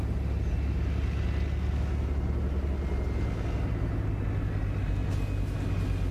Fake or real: real